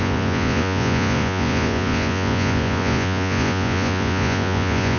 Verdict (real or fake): fake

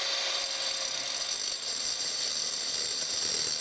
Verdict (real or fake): real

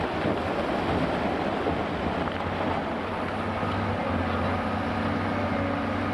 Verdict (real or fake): real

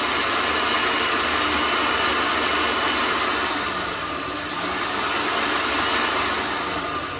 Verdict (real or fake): real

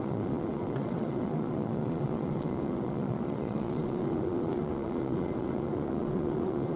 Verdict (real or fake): fake